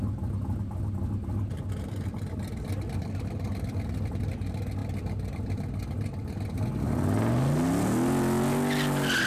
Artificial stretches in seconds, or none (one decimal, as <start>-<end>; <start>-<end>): none